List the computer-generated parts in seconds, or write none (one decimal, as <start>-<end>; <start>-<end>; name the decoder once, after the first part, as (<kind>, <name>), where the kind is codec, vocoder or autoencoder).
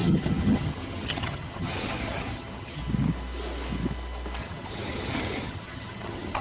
0.0-2.8 (vocoder, HiFi-GAN); 4.4-6.4